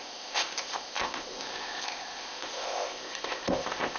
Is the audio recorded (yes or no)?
no